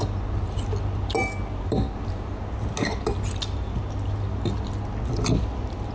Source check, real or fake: real